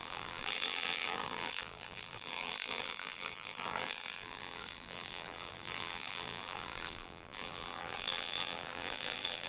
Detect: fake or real fake